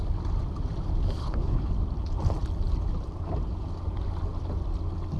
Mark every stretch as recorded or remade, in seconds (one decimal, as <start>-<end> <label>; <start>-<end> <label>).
0.0-1.2 recorded; 1.2-1.7 remade; 1.7-5.2 recorded